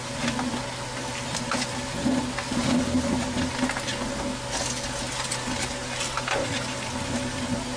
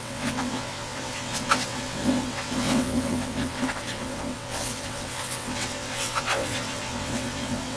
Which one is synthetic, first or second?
second